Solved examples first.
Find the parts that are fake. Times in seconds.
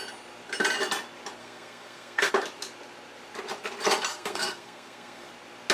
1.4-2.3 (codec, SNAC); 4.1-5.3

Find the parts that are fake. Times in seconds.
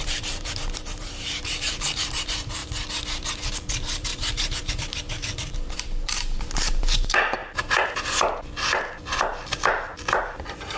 0.0-2.6 (vocoder, BigVGAN v2); 3.5-7.4; 10.2-10.8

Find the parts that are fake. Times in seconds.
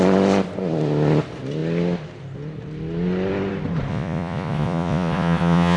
3.9-5.8 (vocoder, Vocos)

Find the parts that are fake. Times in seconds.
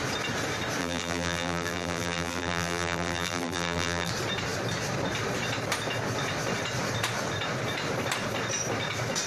0.8-4.1 (vocoder, BigVGAN v2)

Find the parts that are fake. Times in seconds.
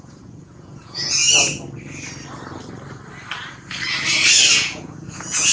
0.0-1.2 (vocoder, Vocos); 4.5-5.5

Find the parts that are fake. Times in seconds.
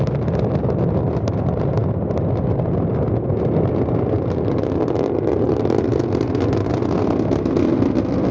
none